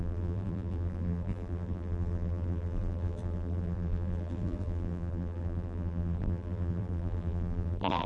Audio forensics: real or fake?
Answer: fake